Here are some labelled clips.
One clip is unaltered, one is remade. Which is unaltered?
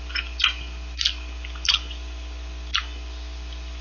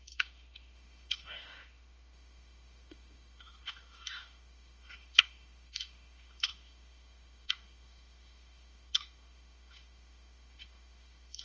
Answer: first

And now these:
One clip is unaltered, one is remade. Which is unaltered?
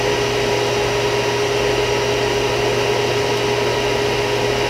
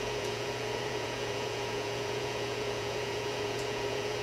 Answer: first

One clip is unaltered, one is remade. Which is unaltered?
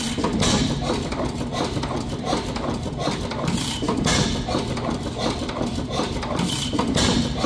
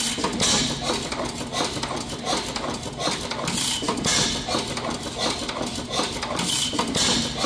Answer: second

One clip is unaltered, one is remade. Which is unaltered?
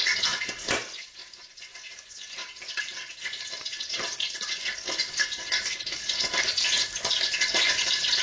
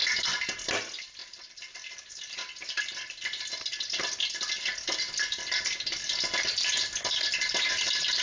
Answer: second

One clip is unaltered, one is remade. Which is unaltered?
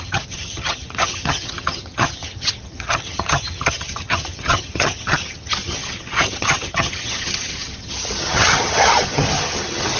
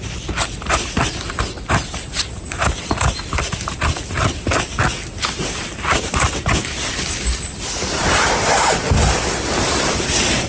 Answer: second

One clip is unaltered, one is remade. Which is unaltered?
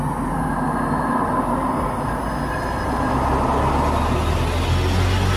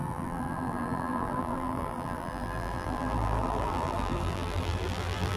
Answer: first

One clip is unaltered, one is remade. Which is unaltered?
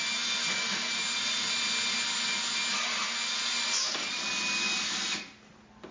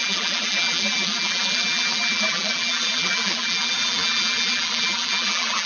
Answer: first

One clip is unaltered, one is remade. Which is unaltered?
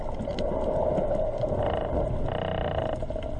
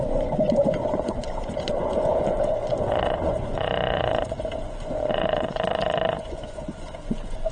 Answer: first